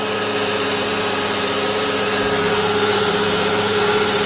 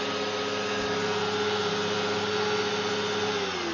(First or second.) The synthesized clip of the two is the first